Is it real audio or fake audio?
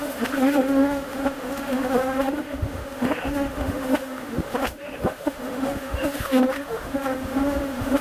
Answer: fake